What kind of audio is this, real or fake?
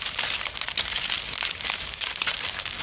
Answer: real